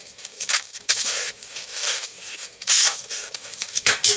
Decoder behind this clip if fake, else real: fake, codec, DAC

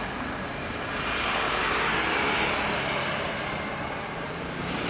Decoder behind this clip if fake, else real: real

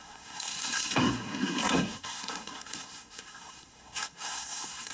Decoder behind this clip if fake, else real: fake, codec, SNAC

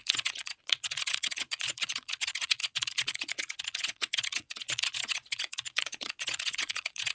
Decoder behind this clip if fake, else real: fake, vocoder, Vocos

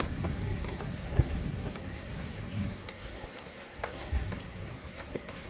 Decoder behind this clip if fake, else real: fake, codec, SNAC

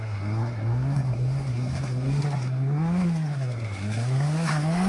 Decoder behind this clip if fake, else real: fake, codec, SNAC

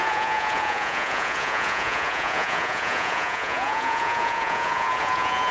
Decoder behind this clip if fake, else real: fake, vocoder, Vocos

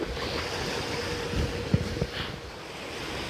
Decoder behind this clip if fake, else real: real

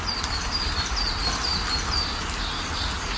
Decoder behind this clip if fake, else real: real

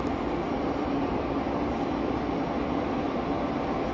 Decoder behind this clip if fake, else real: real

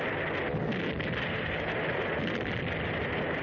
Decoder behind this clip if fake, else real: real